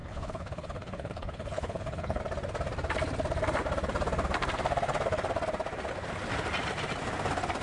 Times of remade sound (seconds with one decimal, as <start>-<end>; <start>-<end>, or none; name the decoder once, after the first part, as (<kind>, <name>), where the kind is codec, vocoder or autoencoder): 0.0-2.2 (codec, HILCodec)